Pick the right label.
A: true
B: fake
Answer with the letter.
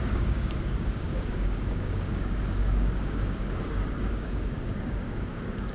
B